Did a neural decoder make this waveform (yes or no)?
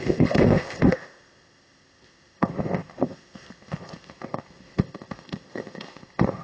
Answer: yes